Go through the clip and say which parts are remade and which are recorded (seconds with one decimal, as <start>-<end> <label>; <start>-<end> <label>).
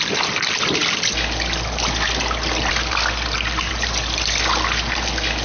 0.0-5.4 recorded